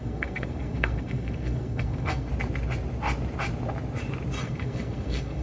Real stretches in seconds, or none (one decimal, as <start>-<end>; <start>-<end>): 2.3-4.4